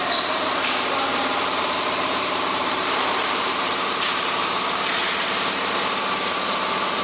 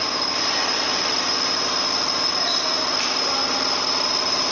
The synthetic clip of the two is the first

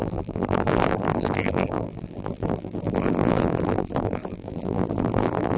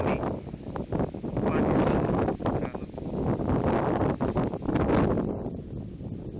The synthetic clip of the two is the first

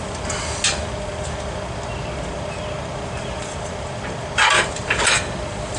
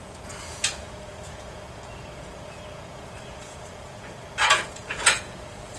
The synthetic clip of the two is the second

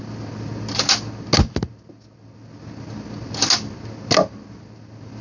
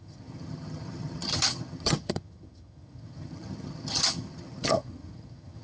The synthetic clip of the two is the second